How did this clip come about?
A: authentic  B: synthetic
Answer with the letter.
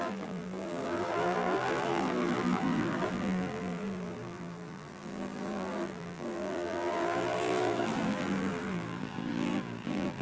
B